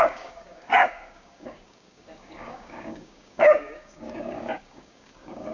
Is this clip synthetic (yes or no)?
yes